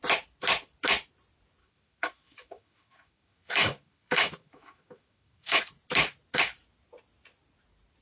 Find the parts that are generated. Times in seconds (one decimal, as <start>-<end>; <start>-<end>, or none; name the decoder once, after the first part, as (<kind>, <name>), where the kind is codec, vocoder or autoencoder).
1.6-5.6 (autoencoder, DAC-VAE)